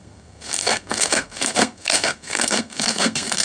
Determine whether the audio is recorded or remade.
remade